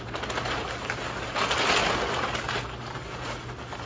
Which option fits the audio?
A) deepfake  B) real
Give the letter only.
B